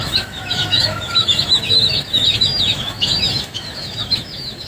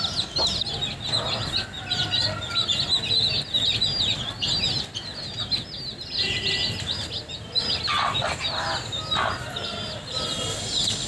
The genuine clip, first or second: second